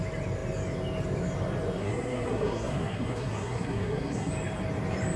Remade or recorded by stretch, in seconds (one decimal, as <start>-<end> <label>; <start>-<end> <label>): 0.0-1.8 recorded; 1.8-4.3 remade; 4.3-5.2 recorded